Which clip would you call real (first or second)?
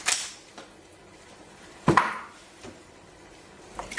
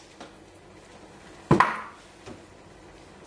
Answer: second